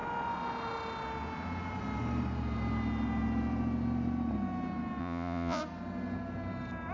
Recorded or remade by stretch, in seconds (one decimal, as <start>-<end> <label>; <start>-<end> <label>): 0.0-5.0 recorded; 5.0-5.6 remade; 5.6-6.9 recorded